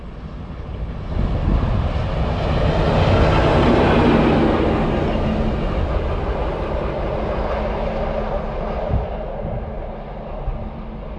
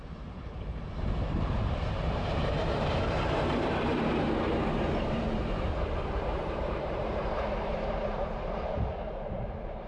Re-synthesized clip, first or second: second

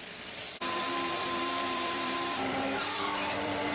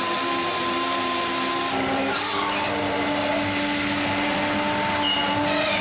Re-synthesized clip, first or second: first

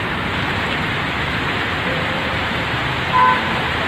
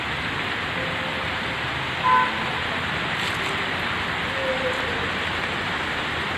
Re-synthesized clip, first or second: first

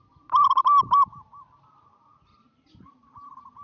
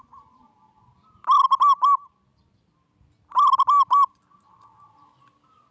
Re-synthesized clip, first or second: first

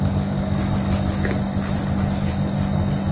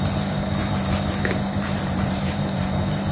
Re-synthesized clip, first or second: second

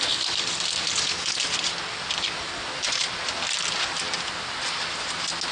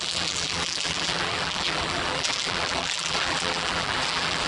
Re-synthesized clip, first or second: second